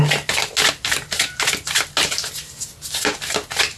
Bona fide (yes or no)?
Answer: yes